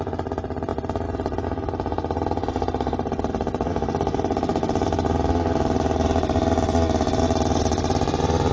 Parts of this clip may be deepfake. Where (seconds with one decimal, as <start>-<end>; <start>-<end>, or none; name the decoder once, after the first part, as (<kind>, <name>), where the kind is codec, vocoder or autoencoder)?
none